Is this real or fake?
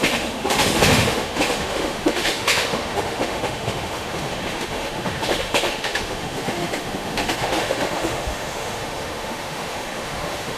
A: fake